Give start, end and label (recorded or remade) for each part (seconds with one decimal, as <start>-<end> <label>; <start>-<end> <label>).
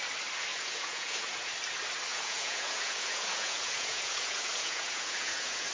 0.0-0.5 recorded; 0.5-1.5 remade; 1.5-2.1 recorded; 2.1-5.7 remade